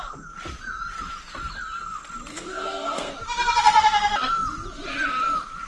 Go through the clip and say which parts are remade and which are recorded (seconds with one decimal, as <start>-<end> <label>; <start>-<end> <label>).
0.0-2.3 recorded; 2.3-3.1 remade; 3.1-5.7 recorded